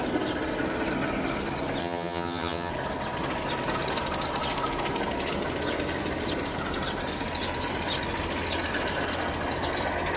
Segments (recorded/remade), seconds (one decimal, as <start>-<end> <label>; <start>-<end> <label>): 0.0-1.8 recorded; 1.8-2.7 remade; 2.7-10.2 recorded